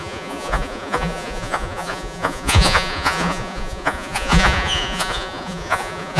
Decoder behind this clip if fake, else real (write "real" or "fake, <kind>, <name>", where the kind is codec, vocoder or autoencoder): fake, vocoder, Vocos